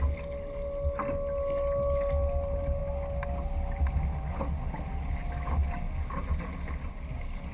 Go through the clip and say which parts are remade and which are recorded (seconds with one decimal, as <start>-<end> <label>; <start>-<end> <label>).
0.0-7.5 recorded